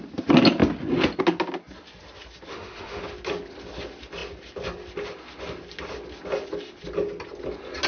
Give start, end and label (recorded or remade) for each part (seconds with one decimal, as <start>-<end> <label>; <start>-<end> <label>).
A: 0.0-2.5 recorded; 2.5-3.0 remade; 3.0-7.9 recorded